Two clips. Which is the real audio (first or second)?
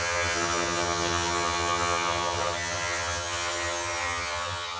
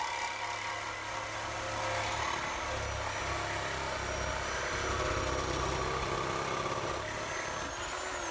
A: second